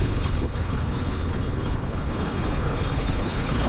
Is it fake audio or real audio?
fake